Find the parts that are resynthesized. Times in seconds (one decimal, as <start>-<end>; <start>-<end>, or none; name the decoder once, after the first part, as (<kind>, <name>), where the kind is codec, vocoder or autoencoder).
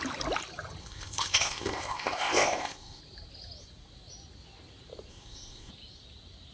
0.8-3.0 (codec, ZipCodec); 5.1-5.7